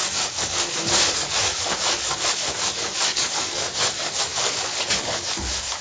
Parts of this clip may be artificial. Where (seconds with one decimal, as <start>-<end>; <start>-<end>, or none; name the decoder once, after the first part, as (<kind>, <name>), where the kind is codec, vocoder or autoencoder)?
0.0-5.8 (codec, DAC)